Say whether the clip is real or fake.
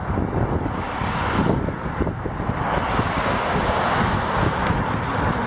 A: real